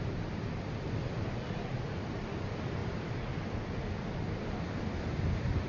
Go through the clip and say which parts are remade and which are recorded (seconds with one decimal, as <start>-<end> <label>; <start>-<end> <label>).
0.0-5.7 recorded